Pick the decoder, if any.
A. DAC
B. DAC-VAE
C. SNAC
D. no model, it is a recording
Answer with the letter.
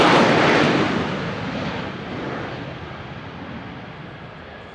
D